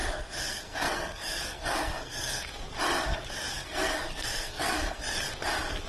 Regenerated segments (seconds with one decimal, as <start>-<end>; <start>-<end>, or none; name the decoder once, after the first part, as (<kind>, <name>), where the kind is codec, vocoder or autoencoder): 0.0-2.5 (codec, SNAC); 3.5-5.0